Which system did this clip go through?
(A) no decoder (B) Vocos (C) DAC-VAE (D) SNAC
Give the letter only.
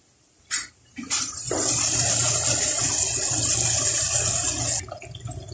A